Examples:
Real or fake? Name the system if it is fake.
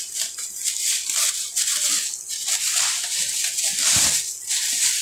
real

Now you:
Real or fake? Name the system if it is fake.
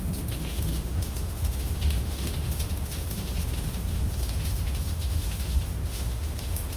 fake, autoencoder, DAC-VAE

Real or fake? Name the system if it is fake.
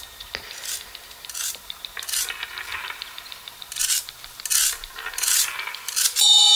real